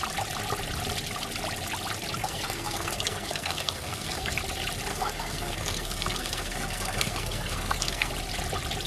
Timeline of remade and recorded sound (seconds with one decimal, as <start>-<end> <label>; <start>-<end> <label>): 0.0-2.2 recorded; 2.2-4.3 remade; 4.3-4.9 recorded; 4.9-8.1 remade; 8.1-8.9 recorded